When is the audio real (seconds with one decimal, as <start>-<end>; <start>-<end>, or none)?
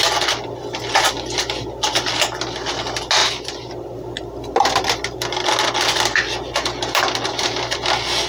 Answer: 0.0-3.2; 3.7-8.3